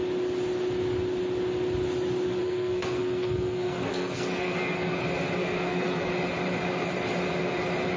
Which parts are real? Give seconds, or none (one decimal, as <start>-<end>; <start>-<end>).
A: 0.0-2.4; 5.0-5.4; 6.1-8.0